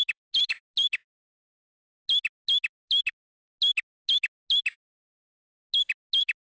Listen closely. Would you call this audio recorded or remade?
recorded